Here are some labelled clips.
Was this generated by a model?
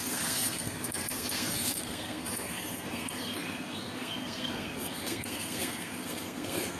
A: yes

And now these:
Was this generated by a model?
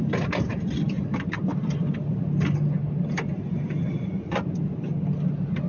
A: no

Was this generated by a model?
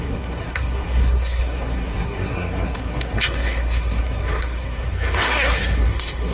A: yes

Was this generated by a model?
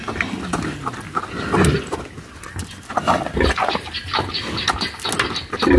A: no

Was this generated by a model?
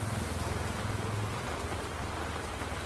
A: no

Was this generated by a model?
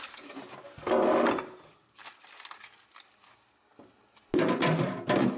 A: no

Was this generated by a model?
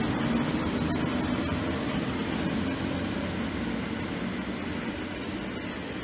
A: no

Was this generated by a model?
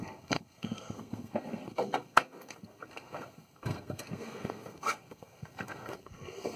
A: yes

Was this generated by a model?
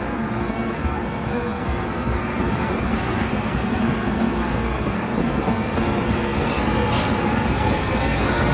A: yes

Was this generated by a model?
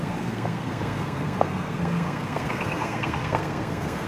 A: yes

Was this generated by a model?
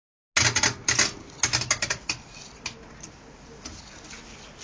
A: no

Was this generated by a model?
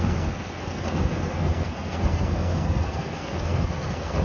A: yes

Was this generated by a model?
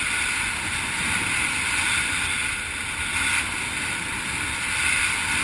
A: no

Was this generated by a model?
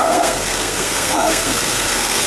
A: yes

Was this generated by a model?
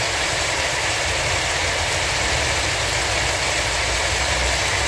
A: no